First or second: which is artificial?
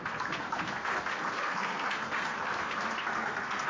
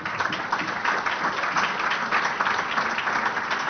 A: first